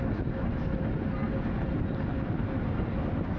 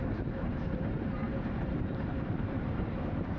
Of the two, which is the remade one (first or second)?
second